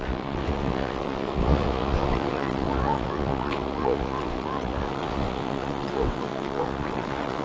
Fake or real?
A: fake